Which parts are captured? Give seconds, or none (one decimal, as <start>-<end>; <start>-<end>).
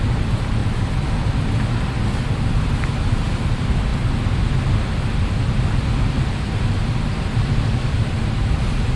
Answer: 0.0-9.0